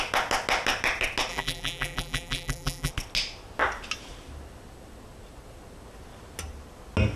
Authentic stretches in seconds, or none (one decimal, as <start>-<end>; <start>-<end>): 0.0-1.3; 2.9-7.2